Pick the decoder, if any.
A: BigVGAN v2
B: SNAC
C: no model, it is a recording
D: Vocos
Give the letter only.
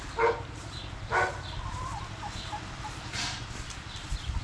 C